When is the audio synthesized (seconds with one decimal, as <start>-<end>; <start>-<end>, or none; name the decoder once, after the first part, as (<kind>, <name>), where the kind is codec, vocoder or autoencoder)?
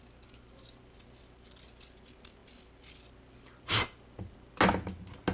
none